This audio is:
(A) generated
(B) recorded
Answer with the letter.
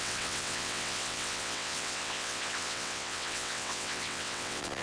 A